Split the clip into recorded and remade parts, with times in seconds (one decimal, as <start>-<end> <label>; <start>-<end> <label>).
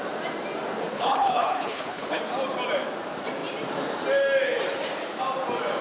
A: 0.0-0.9 recorded; 0.9-2.2 remade; 2.2-5.8 recorded